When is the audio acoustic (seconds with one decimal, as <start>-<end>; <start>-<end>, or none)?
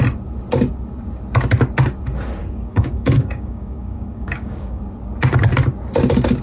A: 0.0-2.4; 4.8-6.4